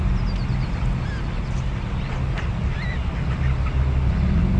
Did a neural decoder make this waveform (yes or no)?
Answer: no